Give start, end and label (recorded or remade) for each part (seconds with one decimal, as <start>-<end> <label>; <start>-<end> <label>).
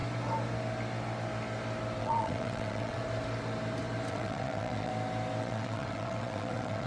0.0-2.0 recorded; 2.0-3.0 remade; 3.0-4.1 recorded; 4.1-4.9 remade; 4.9-5.4 recorded; 5.4-6.9 remade